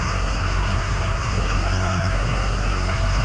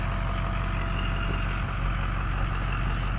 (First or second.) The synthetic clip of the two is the first